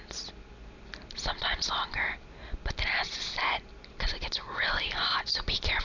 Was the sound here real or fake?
real